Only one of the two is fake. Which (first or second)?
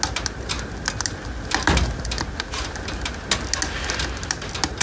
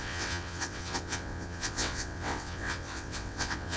second